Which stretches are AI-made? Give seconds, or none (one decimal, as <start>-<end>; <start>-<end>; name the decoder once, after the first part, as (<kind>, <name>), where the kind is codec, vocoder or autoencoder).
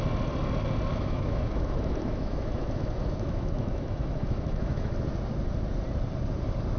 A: 0.9-4.9 (autoencoder, DAC-VAE)